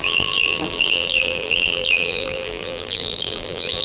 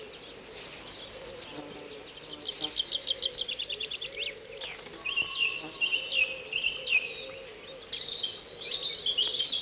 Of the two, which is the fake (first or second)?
first